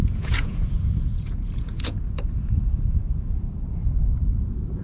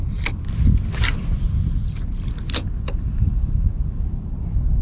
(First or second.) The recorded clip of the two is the second